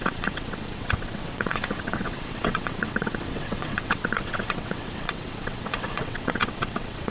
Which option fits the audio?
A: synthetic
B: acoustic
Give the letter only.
A